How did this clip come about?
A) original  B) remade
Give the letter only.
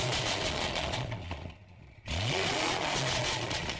B